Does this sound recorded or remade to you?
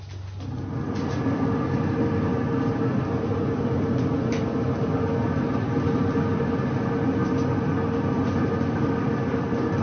recorded